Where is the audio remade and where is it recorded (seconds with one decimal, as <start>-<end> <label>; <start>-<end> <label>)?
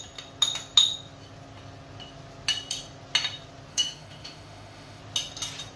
0.0-3.7 recorded; 3.7-5.0 remade; 5.0-5.8 recorded